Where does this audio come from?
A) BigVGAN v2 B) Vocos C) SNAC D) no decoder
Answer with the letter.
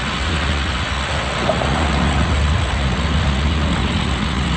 B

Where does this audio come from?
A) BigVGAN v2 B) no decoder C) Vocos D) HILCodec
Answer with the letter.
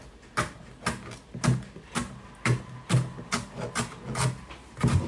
B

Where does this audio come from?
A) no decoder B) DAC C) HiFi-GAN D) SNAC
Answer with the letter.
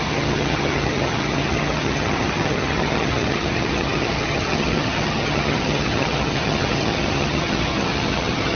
C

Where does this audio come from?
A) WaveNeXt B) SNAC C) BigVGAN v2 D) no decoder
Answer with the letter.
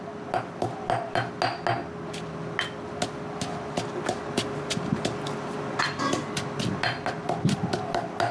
D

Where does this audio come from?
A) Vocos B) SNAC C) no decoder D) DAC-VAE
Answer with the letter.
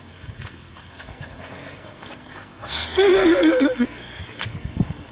B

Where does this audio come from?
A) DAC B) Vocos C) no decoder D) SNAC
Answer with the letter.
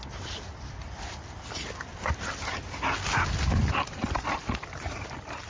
C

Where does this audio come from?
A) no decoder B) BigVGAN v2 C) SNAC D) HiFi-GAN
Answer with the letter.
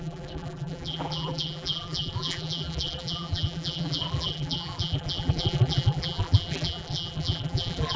B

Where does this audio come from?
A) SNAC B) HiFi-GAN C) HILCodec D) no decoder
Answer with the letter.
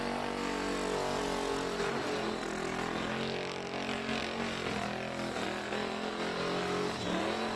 D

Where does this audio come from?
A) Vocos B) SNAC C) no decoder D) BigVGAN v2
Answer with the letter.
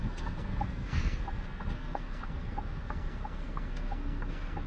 B